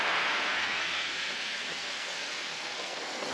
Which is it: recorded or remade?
remade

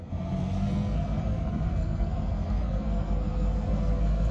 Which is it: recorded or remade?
remade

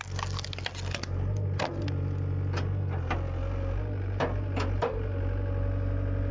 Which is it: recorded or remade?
recorded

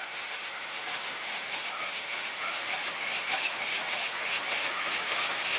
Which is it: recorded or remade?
remade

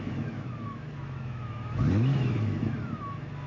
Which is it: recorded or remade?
remade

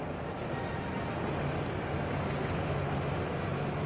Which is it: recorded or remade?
recorded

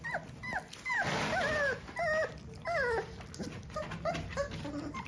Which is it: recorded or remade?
recorded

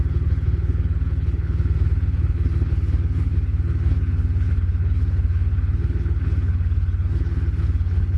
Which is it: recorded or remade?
remade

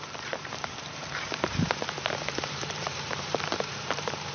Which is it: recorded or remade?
remade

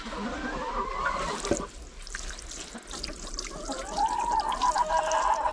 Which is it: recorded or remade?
recorded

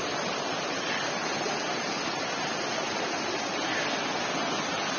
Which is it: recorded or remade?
recorded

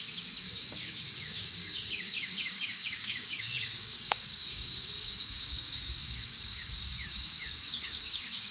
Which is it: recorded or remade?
remade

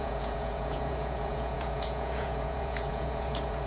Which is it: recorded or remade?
remade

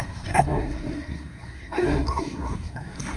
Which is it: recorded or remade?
remade